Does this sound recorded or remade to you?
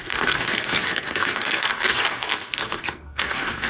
remade